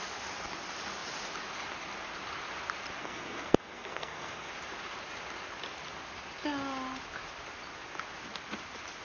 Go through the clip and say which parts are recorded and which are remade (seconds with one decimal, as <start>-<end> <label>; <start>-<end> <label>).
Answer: 0.0-3.0 recorded; 3.0-4.5 remade; 4.5-9.0 recorded